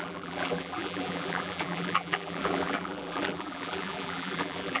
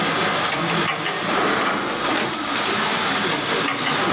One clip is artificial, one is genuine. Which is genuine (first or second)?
second